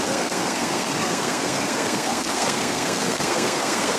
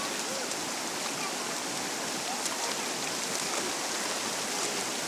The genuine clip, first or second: second